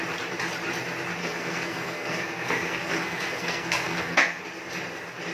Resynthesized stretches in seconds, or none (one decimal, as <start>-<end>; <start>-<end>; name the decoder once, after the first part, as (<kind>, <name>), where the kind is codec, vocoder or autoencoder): 1.2-4.4 (codec, SNAC)